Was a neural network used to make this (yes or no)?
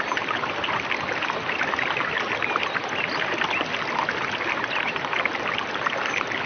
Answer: no